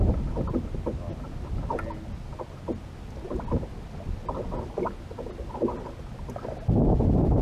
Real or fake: real